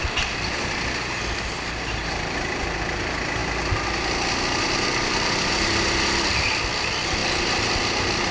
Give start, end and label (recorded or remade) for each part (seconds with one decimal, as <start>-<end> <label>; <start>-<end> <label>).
0.0-8.3 recorded